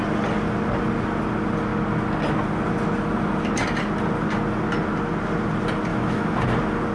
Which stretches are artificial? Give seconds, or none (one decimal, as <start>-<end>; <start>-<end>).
5.9-6.4